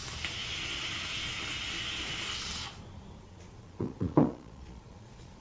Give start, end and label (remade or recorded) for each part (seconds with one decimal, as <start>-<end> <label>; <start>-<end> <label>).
0.0-3.2 recorded; 3.2-5.4 remade